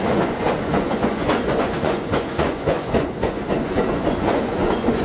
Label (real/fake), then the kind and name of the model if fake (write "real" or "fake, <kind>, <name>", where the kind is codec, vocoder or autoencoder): fake, vocoder, Vocos